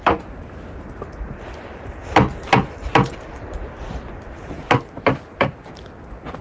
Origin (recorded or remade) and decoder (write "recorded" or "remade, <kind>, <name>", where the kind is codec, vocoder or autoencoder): recorded